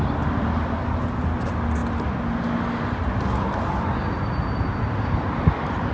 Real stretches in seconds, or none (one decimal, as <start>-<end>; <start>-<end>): 0.0-5.9